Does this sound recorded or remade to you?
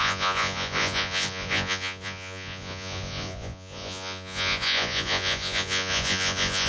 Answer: remade